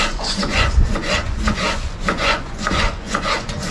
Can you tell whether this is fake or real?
fake